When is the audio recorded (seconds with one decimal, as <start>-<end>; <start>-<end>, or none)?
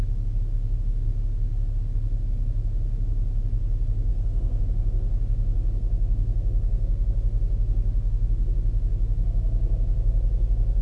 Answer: 0.0-4.1; 4.6-5.8; 7.1-10.8